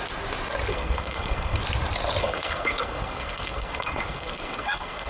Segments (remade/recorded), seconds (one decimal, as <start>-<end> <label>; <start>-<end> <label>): 0.0-0.7 recorded; 0.7-1.6 remade; 1.6-2.2 recorded; 2.2-5.1 remade